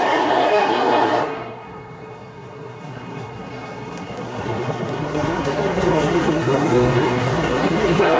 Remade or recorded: remade